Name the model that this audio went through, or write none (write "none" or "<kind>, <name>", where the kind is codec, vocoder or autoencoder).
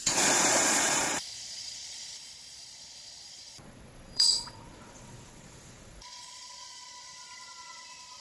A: vocoder, Vocos